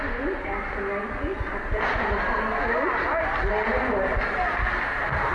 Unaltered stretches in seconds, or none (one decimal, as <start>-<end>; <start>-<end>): 0.0-5.3